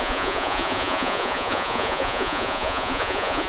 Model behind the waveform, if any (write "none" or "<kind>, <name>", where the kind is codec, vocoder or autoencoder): vocoder, Vocos